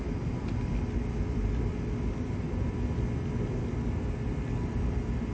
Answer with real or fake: real